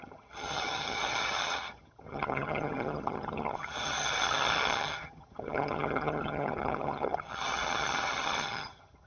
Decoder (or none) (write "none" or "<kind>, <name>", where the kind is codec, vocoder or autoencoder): vocoder, HiFi-GAN